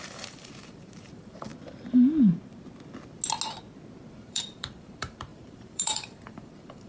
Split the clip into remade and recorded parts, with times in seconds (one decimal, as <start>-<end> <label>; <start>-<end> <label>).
0.0-1.5 remade; 1.5-4.1 recorded; 4.1-6.9 remade